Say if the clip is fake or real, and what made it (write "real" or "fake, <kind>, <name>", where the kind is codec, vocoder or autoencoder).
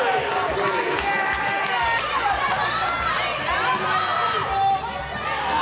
real